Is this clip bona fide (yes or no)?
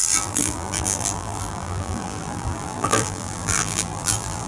no